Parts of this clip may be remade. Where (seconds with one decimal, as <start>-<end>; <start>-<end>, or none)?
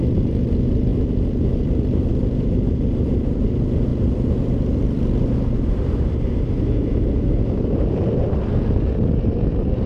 none